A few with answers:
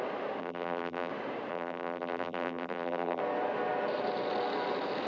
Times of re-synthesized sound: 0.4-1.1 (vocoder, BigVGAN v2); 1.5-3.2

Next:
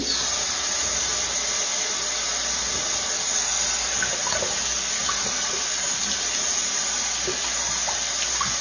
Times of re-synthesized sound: none

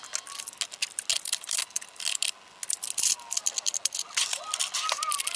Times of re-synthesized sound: 1.1-1.6 (vocoder, BigVGAN v2)

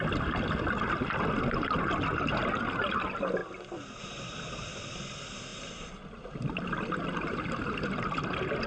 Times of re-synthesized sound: none

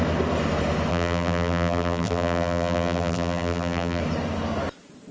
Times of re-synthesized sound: 0.9-4.0 (vocoder, BigVGAN v2)

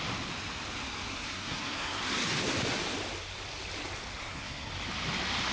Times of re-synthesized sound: 1.1-2.0 (codec, SNAC); 4.2-4.7

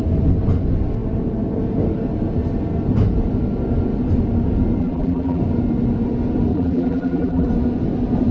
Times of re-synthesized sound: 4.8-5.4 (vocoder, BigVGAN v2); 6.5-7.5